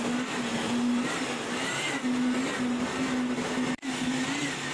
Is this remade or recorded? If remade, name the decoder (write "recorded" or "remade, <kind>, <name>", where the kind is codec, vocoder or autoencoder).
recorded